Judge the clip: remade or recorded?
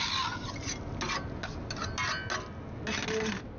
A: recorded